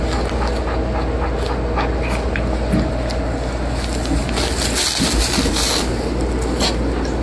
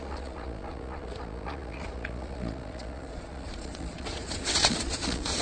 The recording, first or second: first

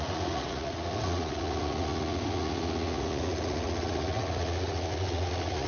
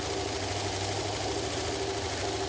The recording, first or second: second